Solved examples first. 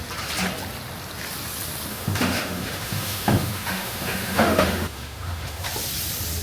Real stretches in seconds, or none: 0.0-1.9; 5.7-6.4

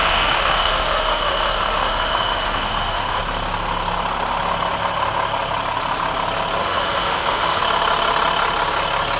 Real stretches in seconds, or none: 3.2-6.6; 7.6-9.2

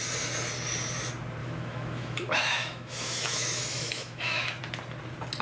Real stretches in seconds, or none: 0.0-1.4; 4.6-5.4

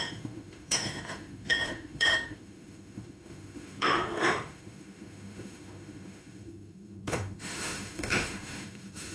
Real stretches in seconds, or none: none

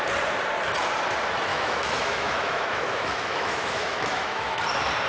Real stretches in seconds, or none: 0.0-1.5; 4.6-5.1

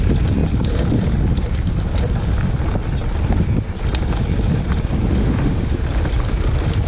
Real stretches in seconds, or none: 0.0-5.0; 5.8-6.9

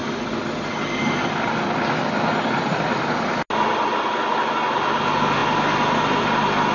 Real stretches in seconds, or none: 0.0-6.7

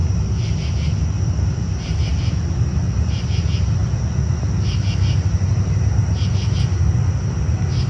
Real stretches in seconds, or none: 0.0-7.9